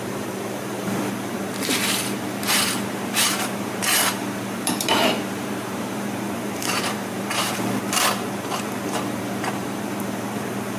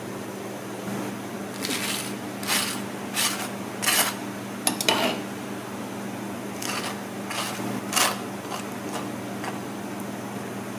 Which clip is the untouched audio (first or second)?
second